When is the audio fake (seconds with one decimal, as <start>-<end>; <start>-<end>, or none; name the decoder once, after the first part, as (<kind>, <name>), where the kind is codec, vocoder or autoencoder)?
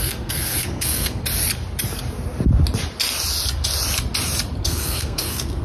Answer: 0.0-1.2 (codec, SNAC); 4.6-5.6